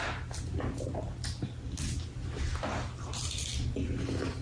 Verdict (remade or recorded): recorded